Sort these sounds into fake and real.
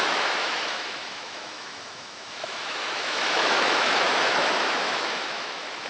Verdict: fake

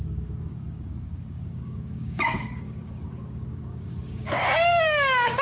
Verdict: fake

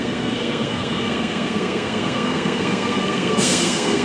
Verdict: fake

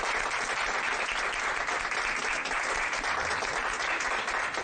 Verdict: real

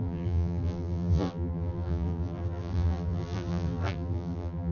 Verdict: fake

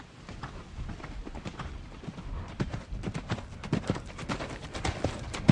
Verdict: fake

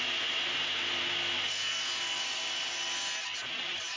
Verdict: real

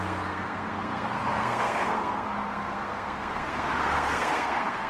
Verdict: fake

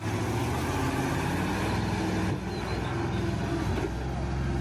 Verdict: real